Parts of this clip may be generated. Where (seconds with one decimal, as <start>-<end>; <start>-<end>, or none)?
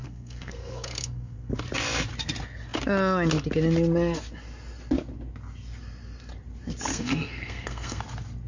0.0-1.5; 6.9-8.0